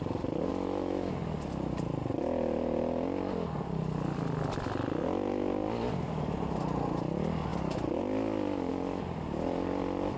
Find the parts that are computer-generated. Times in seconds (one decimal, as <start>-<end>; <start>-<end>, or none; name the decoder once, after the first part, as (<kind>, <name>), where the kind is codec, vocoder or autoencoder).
0.5-1.1 (autoencoder, DAC-VAE)